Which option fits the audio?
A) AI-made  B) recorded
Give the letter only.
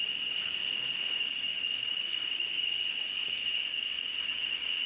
A